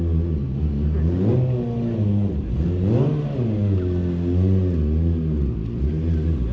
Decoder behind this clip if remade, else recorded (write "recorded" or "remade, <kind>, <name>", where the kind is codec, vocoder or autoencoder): recorded